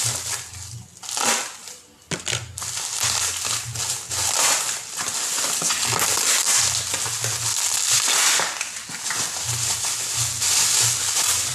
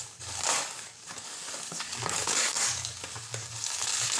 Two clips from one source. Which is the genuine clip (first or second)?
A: first